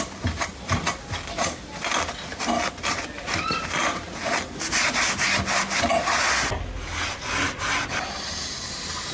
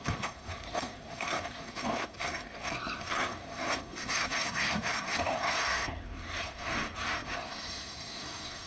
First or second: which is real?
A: first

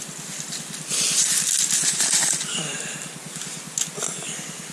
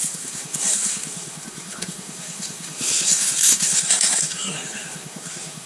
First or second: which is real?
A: first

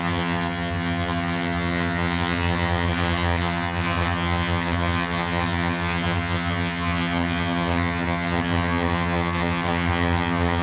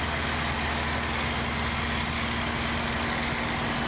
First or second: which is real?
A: second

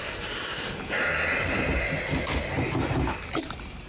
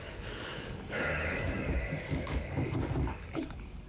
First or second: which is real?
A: first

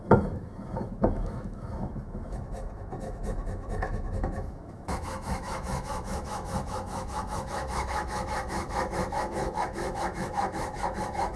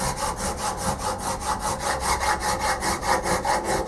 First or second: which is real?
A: second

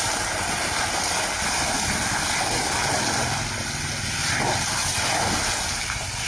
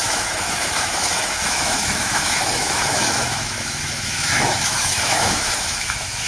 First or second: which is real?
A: first